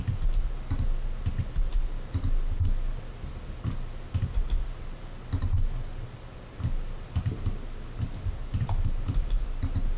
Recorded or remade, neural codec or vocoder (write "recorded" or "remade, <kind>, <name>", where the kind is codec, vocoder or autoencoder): recorded